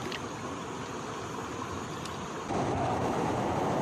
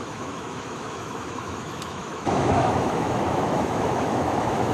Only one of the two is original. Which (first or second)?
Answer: first